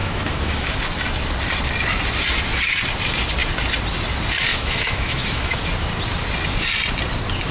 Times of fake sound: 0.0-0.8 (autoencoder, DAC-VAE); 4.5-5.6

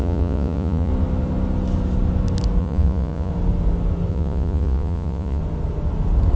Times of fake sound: 0.0-0.9 (vocoder, Vocos); 2.6-3.3; 4.1-5.4

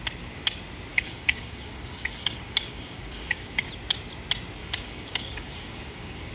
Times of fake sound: 0.9-3.7 (codec, DAC); 4.6-6.3

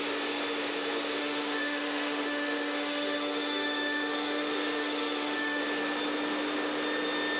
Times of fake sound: 1.2-5.6 (autoencoder, DAC-VAE)